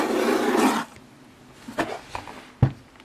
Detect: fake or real real